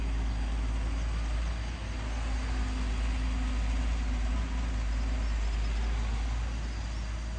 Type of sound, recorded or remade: recorded